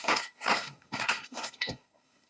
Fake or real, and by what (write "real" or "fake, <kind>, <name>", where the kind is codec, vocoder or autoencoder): fake, codec, SNAC